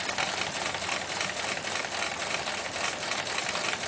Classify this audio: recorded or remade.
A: recorded